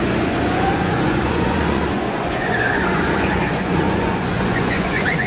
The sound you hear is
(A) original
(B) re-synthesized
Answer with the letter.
B